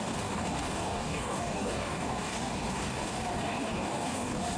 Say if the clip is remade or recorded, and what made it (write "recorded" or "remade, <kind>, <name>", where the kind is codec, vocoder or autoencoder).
remade, codec, DAC